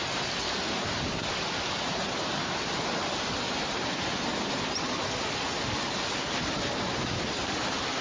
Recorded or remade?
recorded